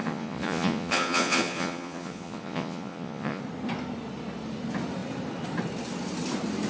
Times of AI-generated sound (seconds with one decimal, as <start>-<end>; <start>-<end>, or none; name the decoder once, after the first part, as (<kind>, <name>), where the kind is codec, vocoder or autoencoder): 0.0-3.4 (vocoder, Vocos)